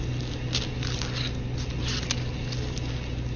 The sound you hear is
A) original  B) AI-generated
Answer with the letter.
A